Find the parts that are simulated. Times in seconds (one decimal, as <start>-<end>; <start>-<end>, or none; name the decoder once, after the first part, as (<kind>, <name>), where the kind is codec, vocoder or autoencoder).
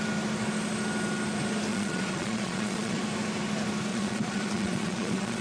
1.7-3.0 (vocoder, Vocos); 3.9-5.4